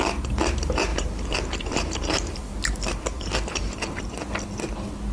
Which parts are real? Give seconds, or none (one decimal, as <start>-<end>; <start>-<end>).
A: 0.0-0.9; 4.0-5.1